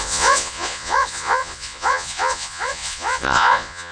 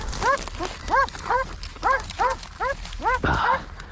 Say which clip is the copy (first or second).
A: first